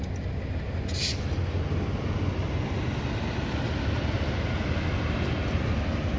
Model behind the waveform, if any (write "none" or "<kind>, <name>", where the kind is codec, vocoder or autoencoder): none